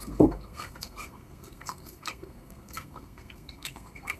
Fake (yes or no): yes